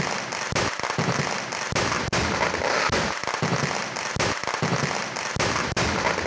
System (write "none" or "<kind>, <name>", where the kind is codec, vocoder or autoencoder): none